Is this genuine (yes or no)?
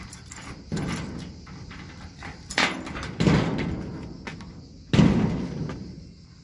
yes